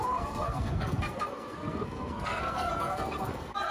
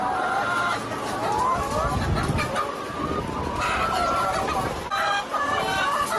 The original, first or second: second